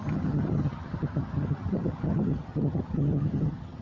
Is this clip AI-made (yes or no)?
yes